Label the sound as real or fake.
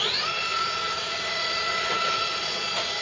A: fake